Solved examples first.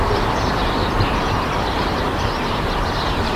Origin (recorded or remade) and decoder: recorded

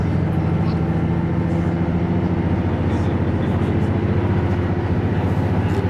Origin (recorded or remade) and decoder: recorded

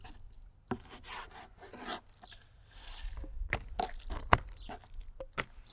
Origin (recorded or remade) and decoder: recorded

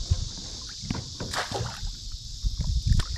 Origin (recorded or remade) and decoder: recorded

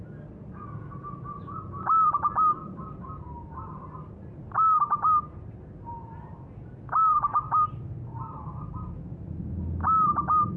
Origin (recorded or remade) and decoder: recorded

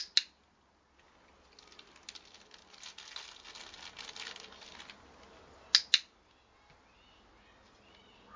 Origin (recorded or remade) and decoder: recorded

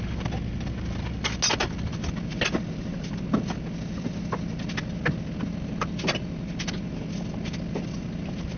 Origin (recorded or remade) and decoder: recorded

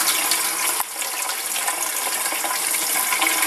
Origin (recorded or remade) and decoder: recorded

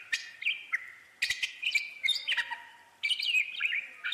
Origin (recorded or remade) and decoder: recorded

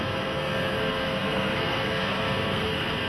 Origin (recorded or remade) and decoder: remade, codec, SNAC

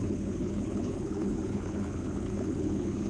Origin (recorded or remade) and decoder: remade, codec, HILCodec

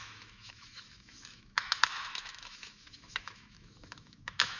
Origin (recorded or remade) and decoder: remade, autoencoder, DAC-VAE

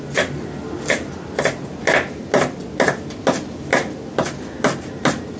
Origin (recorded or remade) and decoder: recorded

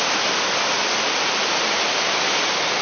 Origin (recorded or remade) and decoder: recorded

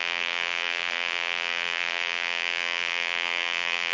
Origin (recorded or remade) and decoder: remade, vocoder, BigVGAN v2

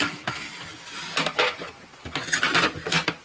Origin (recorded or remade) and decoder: recorded